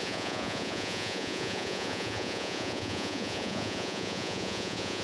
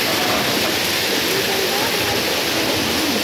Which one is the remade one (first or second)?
first